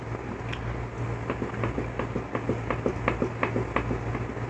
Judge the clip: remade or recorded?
recorded